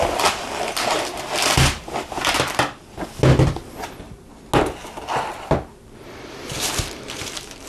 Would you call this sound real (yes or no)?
yes